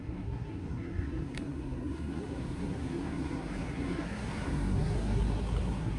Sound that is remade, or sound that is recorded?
remade